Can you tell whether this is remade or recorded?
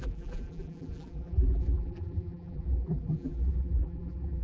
remade